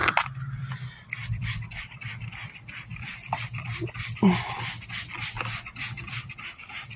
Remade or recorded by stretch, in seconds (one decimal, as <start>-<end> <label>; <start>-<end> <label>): 0.0-0.7 remade; 0.7-1.2 recorded; 1.2-1.9 remade; 1.9-2.9 recorded; 2.9-3.9 remade; 3.9-7.0 recorded